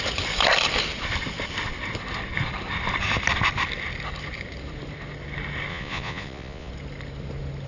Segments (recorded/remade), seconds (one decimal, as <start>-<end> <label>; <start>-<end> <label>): 0.0-5.7 recorded; 5.7-6.7 remade; 6.7-7.7 recorded